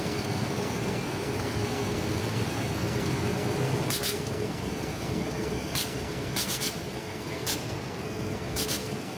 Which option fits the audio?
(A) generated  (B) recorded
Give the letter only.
A